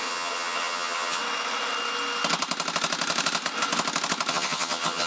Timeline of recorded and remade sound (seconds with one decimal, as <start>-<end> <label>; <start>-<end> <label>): 0.0-1.2 remade; 1.2-4.3 recorded; 4.3-5.1 remade